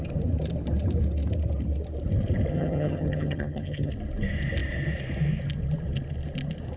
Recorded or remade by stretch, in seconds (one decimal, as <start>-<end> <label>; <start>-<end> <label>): 0.0-2.5 recorded; 2.5-3.9 remade; 3.9-6.8 recorded